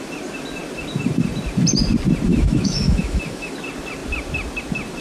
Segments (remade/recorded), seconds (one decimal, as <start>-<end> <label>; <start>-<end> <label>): 0.0-2.3 recorded; 2.3-3.5 remade; 3.5-5.0 recorded